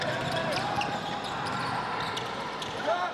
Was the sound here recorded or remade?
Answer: recorded